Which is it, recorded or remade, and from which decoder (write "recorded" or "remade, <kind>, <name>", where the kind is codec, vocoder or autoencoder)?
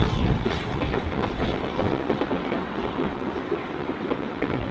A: remade, vocoder, WaveNeXt